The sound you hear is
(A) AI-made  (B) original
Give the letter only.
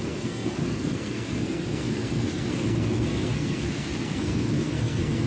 A